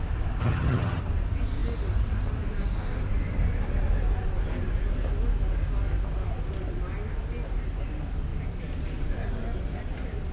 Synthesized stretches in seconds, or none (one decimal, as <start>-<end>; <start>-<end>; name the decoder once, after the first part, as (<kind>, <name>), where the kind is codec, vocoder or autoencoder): 0.4-1.0 (vocoder, HiFi-GAN)